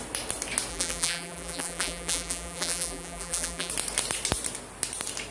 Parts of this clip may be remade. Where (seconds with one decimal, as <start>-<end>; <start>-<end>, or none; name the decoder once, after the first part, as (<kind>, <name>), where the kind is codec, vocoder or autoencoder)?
0.7-3.7 (vocoder, BigVGAN v2)